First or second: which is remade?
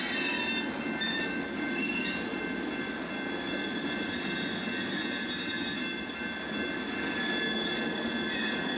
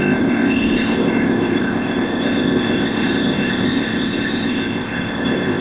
second